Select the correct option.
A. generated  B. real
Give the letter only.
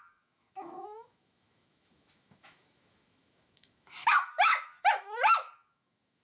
A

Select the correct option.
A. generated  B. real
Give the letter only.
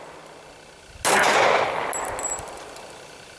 B